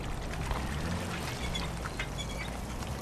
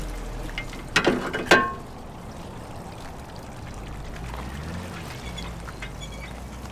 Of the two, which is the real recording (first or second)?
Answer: second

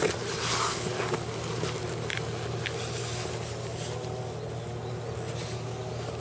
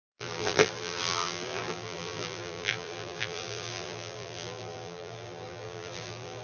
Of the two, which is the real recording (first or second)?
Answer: first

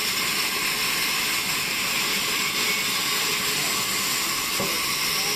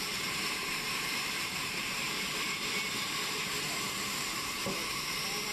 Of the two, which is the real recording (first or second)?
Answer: first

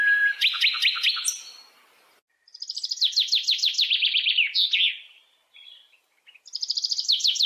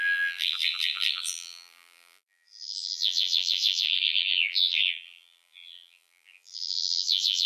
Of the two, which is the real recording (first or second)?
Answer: first